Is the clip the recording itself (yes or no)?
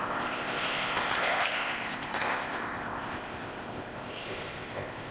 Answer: no